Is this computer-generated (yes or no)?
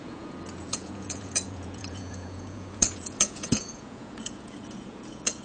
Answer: yes